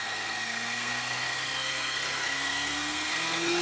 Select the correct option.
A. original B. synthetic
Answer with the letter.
B